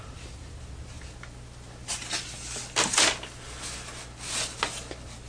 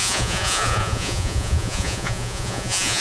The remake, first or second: second